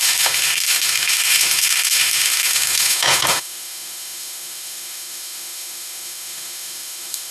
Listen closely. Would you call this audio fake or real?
fake